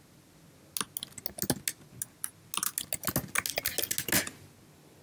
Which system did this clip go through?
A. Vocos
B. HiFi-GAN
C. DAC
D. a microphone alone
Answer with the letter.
D